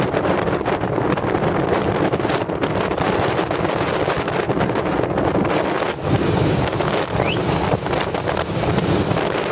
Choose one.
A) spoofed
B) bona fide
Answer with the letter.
B